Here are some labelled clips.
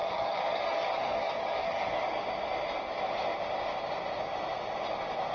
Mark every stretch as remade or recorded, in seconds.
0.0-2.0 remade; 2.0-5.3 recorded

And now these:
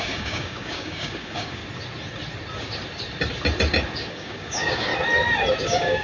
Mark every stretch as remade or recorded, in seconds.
0.0-1.6 remade; 1.6-4.1 recorded; 4.1-4.9 remade; 4.9-5.6 recorded; 5.6-6.0 remade